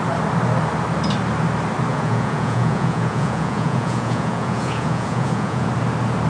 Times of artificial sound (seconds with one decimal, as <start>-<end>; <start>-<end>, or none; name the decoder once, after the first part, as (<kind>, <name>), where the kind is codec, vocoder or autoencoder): 1.9-5.7 (vocoder, Vocos)